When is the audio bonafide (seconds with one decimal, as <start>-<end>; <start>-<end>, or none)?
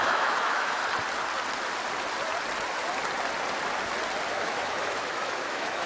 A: 0.8-4.3